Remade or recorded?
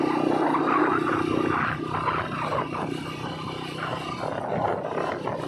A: recorded